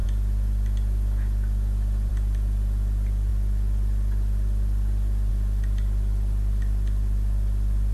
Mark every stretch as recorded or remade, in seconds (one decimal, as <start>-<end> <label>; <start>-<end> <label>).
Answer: 0.0-2.1 recorded; 2.1-3.3 remade; 3.3-5.3 recorded; 5.3-7.9 remade